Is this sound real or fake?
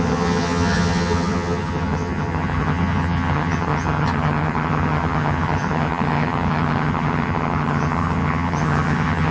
fake